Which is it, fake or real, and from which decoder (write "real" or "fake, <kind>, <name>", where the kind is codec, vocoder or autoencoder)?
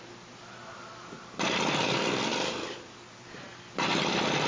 real